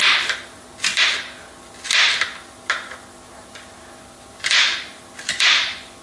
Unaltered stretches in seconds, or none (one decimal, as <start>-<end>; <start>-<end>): 0.0-6.0